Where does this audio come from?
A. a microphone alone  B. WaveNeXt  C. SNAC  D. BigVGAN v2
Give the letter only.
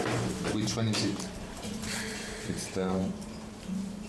D